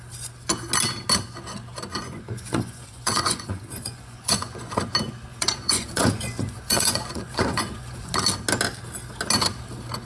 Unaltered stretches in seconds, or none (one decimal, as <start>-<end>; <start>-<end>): 0.0-1.9; 4.7-5.3; 8.1-10.0